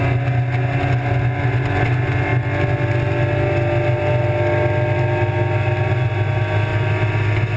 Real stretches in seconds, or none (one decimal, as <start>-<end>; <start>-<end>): 0.0-7.6